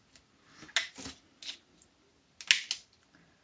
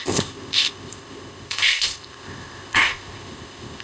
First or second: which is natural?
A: first